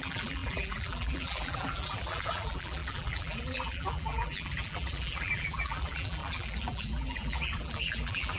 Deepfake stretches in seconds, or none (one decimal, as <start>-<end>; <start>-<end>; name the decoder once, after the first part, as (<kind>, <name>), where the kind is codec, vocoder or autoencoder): 0.0-8.4 (vocoder, BigVGAN v2)